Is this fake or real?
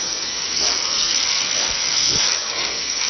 fake